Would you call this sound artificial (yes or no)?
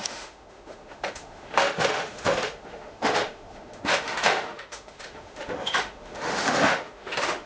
yes